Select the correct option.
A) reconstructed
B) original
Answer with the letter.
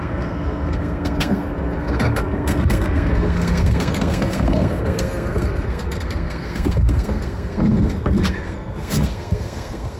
A